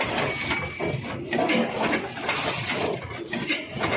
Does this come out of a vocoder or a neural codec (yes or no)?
no